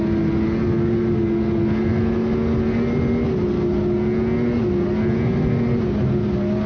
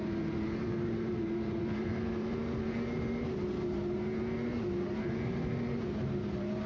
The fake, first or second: second